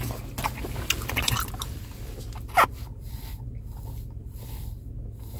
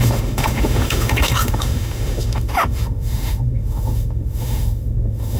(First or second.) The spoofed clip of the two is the second